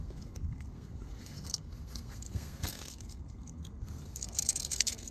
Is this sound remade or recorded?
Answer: remade